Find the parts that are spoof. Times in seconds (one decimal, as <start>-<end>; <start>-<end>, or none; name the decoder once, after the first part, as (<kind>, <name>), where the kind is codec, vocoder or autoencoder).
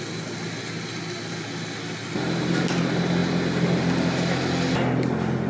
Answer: none